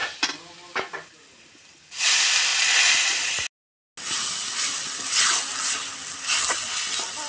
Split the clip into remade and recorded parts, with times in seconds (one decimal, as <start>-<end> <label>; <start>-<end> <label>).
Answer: 0.0-7.3 recorded